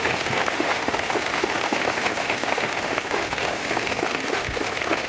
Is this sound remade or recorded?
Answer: remade